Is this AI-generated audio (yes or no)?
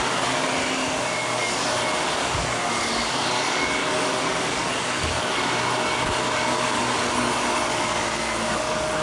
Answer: yes